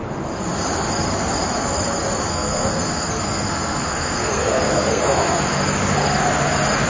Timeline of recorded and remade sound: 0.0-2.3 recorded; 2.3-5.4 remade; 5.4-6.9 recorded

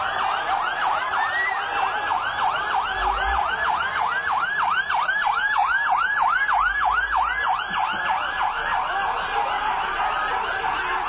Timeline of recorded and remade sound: 0.0-11.1 recorded

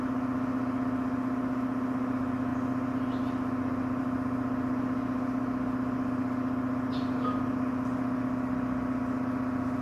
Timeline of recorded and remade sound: 0.0-9.8 recorded

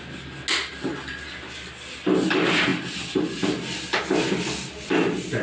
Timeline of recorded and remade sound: 0.0-5.4 recorded